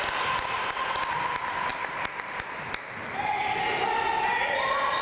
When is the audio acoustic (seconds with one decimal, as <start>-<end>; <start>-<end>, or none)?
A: 0.0-5.0